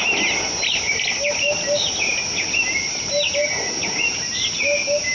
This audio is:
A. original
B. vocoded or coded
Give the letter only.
A